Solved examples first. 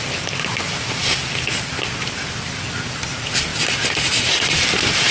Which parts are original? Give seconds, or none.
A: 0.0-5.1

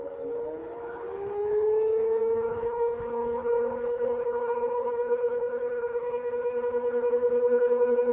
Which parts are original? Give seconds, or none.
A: none

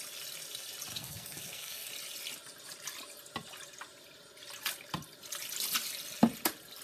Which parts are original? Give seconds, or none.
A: 0.0-0.9; 1.9-6.8

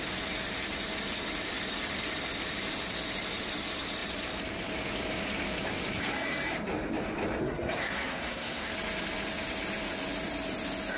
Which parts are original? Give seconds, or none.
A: 0.0-7.4; 8.7-11.0

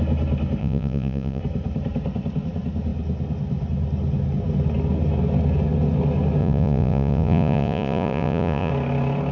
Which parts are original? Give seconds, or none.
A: 0.0-0.6; 1.4-6.4; 8.7-9.3

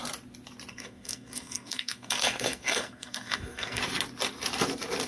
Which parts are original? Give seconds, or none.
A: 0.0-0.7; 3.8-5.1

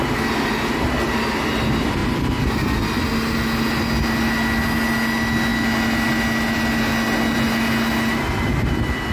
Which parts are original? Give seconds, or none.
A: 0.0-9.1

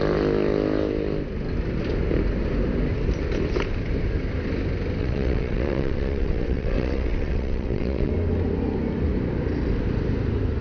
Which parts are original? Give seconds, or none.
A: 0.0-5.0; 8.1-10.6